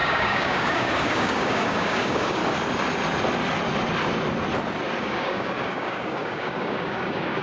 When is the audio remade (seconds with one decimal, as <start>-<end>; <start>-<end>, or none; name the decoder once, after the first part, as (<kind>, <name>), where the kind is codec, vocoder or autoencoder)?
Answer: 0.0-2.4 (codec, DAC); 5.0-7.4